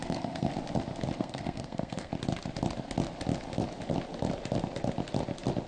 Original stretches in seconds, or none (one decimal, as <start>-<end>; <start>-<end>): 0.5-1.2; 2.1-5.7